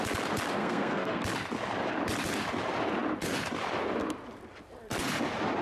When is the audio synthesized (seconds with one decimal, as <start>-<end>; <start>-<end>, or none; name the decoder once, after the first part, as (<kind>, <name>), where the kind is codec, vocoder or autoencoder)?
0.6-1.2 (codec, SNAC)